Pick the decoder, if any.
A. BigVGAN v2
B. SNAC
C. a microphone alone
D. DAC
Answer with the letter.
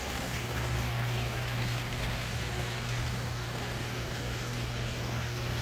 D